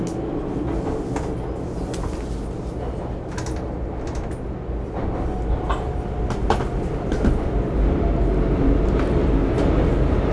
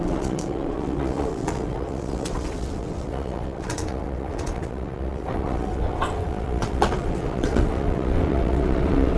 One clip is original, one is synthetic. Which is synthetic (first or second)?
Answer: second